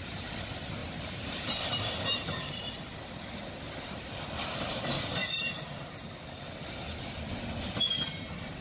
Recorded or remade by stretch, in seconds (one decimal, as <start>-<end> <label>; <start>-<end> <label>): 0.0-0.8 recorded; 0.8-2.6 remade; 2.6-5.2 recorded; 5.2-5.9 remade; 5.9-8.6 recorded

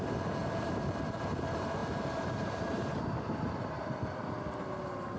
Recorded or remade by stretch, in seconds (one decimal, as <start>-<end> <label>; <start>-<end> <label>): 0.0-1.8 recorded; 1.8-3.8 remade; 3.8-5.2 recorded